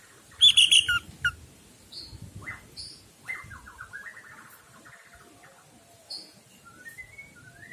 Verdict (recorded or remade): recorded